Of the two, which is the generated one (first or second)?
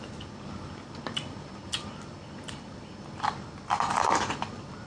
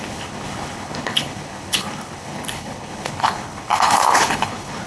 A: second